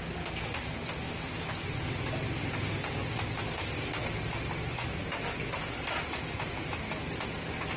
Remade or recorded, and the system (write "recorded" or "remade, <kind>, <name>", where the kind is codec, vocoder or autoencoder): recorded